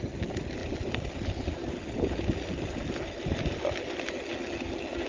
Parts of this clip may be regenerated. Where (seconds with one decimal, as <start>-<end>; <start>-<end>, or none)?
none